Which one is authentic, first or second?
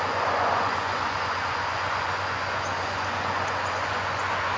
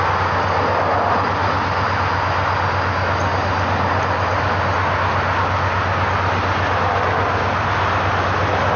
second